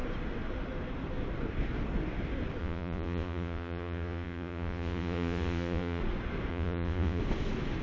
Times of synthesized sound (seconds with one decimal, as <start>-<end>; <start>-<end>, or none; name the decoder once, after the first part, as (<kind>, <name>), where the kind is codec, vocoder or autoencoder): 2.6-6.0 (vocoder, Vocos); 6.5-7.2